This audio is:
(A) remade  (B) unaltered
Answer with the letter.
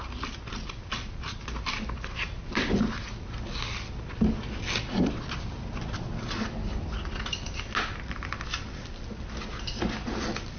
B